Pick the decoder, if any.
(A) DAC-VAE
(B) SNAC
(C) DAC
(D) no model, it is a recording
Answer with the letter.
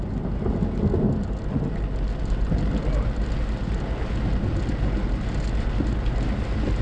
D